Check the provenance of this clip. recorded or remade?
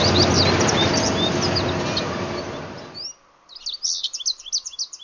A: recorded